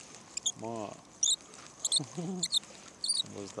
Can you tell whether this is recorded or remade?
recorded